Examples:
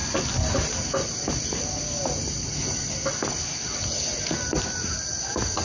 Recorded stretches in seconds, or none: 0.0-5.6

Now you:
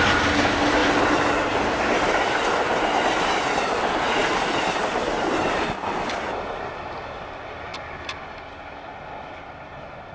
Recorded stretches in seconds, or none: 0.0-10.1

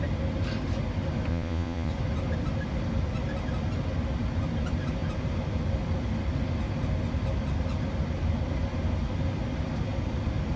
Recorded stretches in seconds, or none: 0.0-1.3; 1.9-10.6

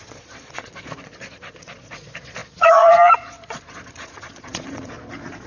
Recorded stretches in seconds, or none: none

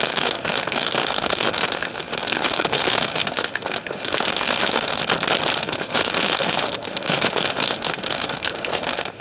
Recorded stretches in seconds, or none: 5.0-5.6

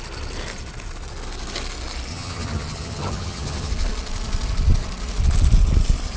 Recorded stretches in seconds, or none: 0.0-2.1; 3.7-6.2